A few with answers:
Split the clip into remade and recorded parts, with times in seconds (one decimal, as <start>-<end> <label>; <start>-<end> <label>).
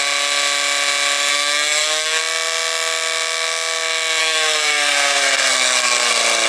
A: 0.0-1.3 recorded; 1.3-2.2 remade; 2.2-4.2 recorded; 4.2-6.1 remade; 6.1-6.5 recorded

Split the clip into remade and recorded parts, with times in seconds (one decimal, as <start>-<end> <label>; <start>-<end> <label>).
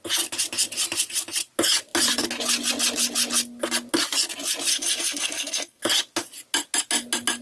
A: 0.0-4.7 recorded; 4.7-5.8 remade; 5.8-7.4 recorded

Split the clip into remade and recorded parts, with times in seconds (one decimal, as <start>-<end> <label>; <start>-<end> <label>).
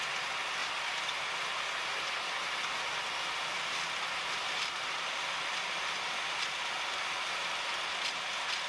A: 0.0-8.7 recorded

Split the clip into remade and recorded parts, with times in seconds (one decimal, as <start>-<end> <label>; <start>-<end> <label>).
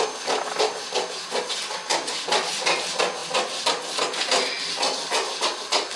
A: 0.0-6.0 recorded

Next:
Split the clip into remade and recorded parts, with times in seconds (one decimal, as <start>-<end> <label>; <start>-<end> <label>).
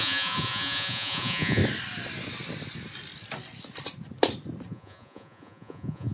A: 0.0-1.6 remade; 1.6-4.7 recorded; 4.7-6.1 remade